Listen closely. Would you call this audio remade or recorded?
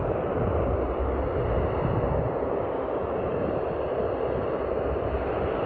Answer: recorded